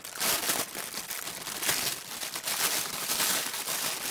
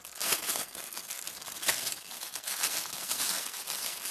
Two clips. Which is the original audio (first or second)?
first